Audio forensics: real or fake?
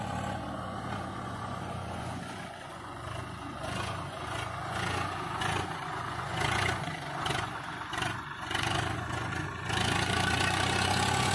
fake